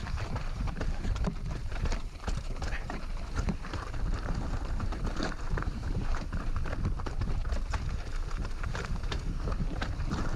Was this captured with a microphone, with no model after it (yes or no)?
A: no